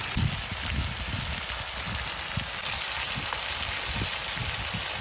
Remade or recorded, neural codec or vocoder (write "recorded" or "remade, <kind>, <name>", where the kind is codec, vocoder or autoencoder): recorded